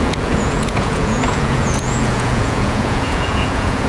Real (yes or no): no